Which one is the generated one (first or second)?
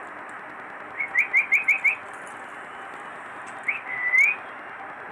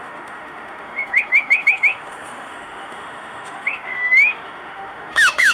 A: second